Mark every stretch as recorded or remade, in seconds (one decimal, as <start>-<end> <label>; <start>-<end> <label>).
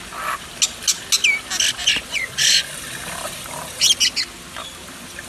0.0-1.8 recorded; 1.8-2.7 remade; 2.7-5.3 recorded